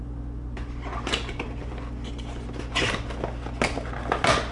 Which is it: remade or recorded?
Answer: recorded